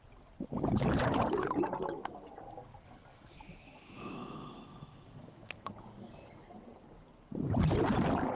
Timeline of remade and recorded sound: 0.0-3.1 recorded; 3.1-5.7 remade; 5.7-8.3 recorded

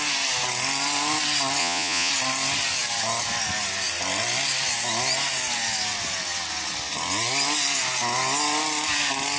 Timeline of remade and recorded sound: 0.0-1.6 recorded; 1.6-2.1 remade; 2.1-9.4 recorded

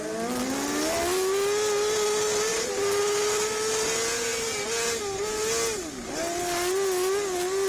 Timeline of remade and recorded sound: 0.0-2.5 recorded; 2.5-3.0 remade; 3.0-7.7 recorded

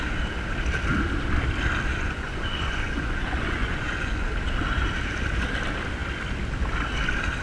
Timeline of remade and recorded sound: 0.0-1.9 recorded; 1.9-4.3 remade; 4.3-7.4 recorded

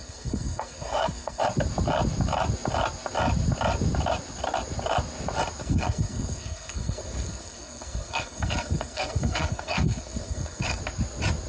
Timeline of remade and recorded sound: 0.0-1.4 remade; 1.4-5.6 recorded; 5.6-10.8 remade; 10.8-11.5 recorded